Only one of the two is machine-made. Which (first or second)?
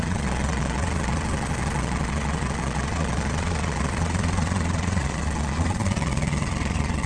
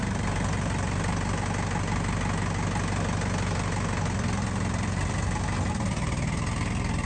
first